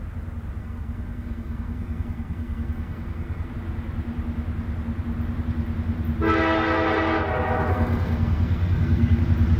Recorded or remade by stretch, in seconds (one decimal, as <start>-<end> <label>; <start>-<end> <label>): 0.0-0.6 recorded; 0.6-3.5 remade; 3.5-7.7 recorded; 7.7-9.2 remade; 9.2-9.6 recorded